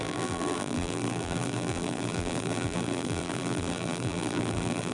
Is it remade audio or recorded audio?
remade